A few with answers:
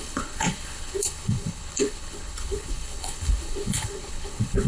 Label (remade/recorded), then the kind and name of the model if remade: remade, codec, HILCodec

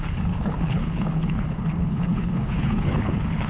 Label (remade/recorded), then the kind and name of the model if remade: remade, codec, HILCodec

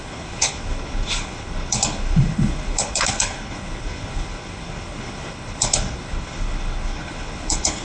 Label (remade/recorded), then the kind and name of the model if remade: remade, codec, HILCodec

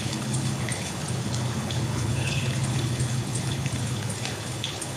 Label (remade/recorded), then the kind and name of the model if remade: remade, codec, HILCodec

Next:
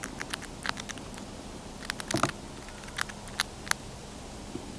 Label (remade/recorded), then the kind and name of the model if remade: recorded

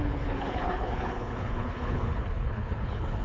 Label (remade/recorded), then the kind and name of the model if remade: remade, codec, HILCodec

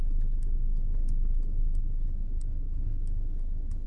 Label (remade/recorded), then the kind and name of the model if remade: remade, codec, HILCodec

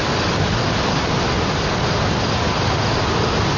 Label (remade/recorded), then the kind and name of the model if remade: recorded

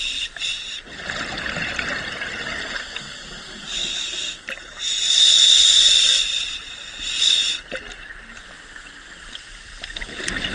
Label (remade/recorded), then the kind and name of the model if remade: recorded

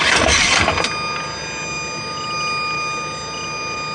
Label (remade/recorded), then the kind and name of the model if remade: recorded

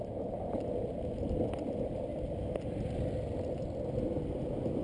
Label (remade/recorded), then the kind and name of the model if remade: recorded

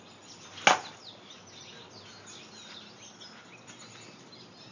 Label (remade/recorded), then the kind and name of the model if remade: recorded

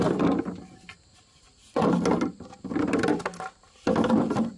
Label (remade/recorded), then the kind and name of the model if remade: recorded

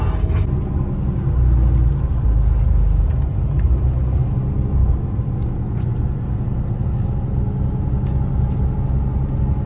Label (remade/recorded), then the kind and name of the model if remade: recorded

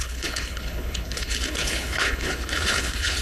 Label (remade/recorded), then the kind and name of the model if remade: remade, codec, HILCodec